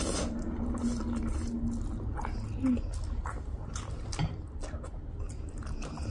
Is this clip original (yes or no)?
yes